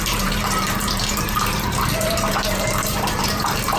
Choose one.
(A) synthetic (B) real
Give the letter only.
A